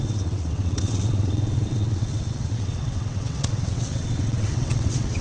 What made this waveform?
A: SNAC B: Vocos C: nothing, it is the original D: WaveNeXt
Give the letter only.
D